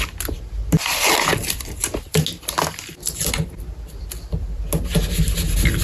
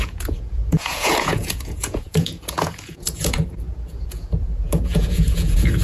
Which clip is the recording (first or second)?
first